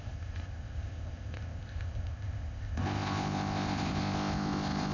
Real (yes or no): no